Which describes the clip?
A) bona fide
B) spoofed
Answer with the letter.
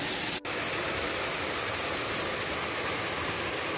A